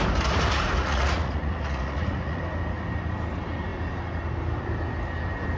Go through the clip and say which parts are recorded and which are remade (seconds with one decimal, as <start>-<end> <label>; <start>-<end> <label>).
0.0-0.8 recorded; 0.8-2.4 remade; 2.4-5.6 recorded